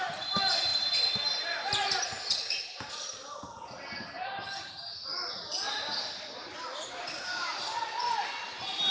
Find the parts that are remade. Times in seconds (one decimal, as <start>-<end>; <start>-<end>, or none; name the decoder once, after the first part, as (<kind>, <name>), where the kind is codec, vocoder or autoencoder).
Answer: none